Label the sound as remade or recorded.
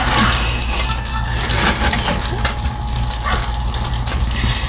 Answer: recorded